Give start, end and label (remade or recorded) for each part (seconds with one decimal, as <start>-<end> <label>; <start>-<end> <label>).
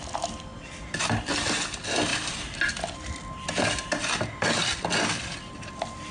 0.0-2.1 recorded; 2.1-2.7 remade; 2.7-6.1 recorded